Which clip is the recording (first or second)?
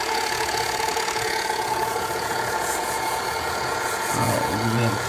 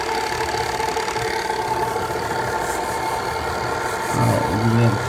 second